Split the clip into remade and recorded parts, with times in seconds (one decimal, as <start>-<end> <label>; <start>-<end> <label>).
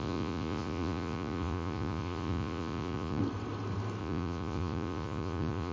0.0-3.2 remade; 3.2-4.0 recorded; 4.0-5.7 remade